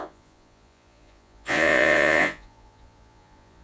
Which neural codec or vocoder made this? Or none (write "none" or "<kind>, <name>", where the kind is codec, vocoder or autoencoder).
vocoder, Vocos